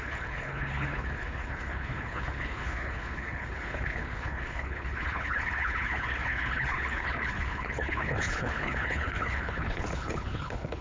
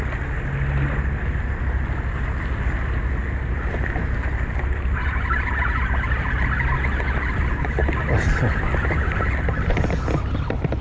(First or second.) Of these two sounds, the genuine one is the second